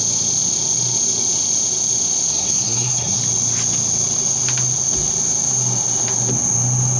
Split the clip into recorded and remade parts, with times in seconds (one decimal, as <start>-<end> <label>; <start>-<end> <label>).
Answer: 0.0-2.3 recorded; 2.3-3.2 remade; 3.2-7.0 recorded